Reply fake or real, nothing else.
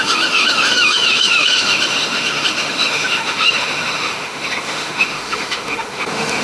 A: fake